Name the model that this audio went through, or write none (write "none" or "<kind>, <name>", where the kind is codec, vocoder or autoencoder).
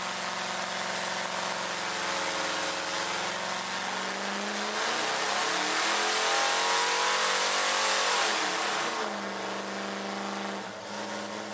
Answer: none